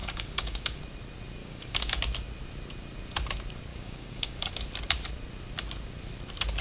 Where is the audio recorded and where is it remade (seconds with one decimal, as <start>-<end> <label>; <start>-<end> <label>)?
0.0-0.8 remade; 0.8-1.4 recorded; 1.4-2.0 remade; 2.0-3.7 recorded; 3.7-4.5 remade; 4.5-6.6 recorded